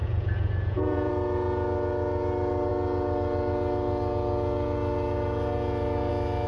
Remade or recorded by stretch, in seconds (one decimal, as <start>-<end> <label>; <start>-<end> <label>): 0.0-1.1 remade; 1.1-6.5 recorded